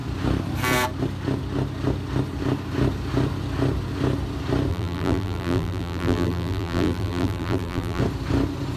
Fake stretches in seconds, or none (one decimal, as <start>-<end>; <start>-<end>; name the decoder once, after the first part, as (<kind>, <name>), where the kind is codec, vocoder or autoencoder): 4.7-8.0 (vocoder, BigVGAN v2)